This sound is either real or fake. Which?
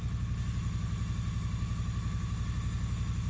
real